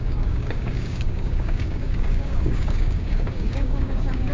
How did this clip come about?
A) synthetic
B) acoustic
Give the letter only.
A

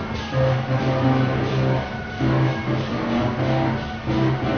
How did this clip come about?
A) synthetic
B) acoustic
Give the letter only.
B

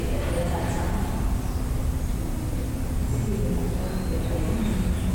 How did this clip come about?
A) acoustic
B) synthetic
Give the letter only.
A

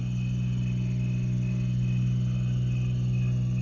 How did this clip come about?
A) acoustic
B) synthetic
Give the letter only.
A